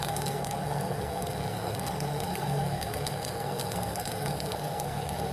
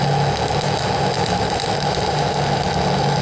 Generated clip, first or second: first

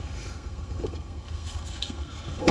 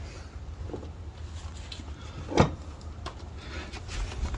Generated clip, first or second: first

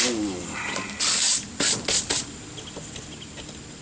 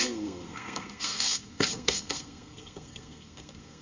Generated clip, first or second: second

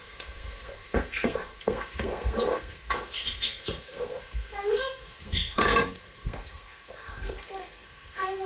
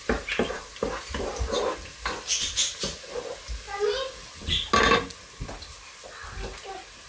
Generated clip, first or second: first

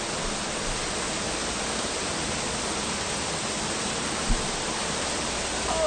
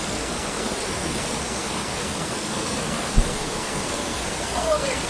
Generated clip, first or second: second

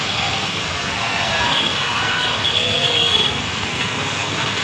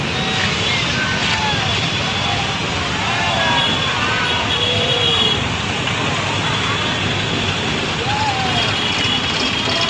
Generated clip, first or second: first